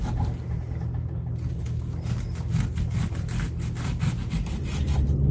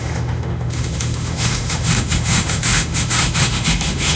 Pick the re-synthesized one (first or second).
second